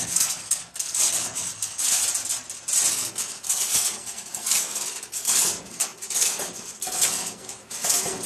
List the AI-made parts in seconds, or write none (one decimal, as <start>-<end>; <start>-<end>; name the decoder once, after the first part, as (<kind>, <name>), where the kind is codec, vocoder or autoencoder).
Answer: 0.0-2.0 (codec, SNAC); 2.9-8.3